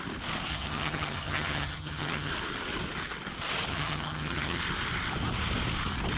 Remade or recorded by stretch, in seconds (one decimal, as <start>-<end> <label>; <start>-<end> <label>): 0.0-0.5 recorded; 0.5-2.3 remade; 2.3-3.7 recorded; 3.7-4.6 remade; 4.6-6.2 recorded